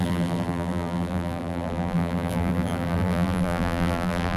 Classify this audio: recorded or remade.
remade